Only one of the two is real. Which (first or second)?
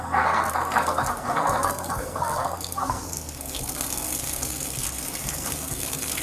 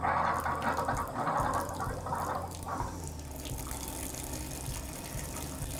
second